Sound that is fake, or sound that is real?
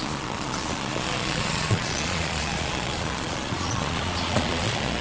fake